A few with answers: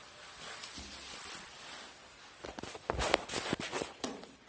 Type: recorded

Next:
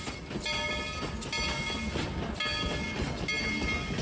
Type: recorded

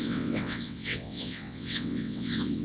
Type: remade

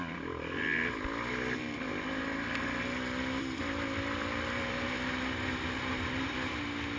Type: recorded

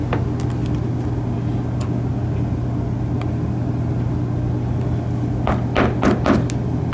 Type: recorded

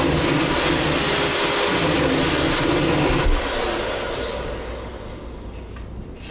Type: recorded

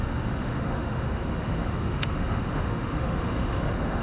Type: remade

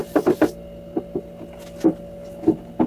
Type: recorded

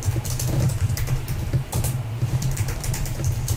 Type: remade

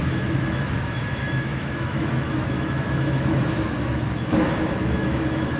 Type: remade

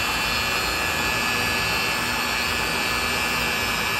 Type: recorded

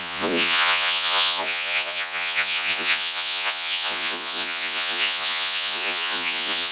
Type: remade